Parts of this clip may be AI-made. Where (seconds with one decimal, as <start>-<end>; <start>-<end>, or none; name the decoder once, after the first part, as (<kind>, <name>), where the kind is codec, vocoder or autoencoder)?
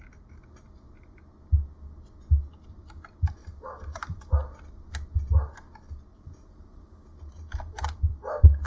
3.4-4.2 (vocoder, BigVGAN v2); 6.1-8.1